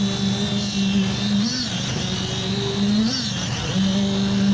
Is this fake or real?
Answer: real